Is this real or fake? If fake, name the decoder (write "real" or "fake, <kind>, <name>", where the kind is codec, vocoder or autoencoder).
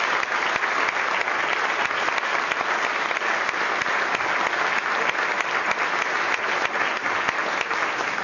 real